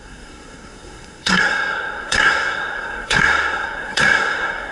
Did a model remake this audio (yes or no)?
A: yes